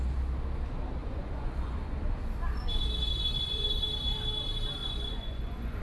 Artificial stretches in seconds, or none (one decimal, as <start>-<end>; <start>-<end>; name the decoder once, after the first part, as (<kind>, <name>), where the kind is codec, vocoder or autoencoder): 1.0-2.0 (vocoder, Vocos); 3.1-3.8; 4.8-5.8